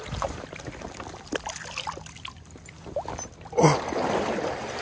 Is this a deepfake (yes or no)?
no